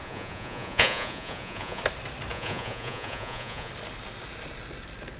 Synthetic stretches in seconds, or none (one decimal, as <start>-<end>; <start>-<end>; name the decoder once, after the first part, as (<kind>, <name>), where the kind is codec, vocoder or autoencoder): 0.0-1.8 (vocoder, Vocos); 2.3-3.7